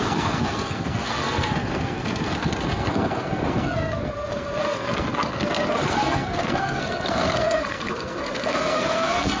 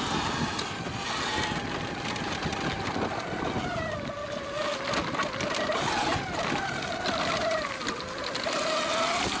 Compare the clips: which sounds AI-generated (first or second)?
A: first